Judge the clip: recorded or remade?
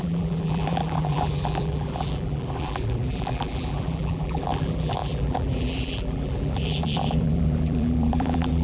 remade